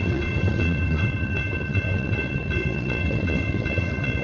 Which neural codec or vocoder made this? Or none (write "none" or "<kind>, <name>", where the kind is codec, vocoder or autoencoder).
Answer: vocoder, WaveNeXt